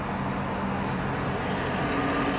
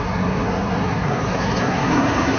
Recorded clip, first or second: first